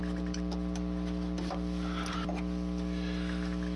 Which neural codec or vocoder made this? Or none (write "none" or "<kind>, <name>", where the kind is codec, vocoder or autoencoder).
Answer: none